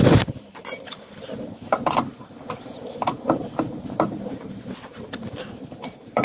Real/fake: fake